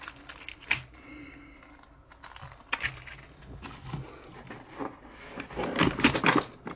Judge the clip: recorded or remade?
recorded